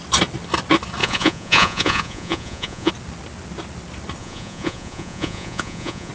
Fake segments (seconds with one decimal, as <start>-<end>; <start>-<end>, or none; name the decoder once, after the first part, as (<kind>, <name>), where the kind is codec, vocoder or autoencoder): 1.0-2.9 (vocoder, Vocos); 4.2-6.1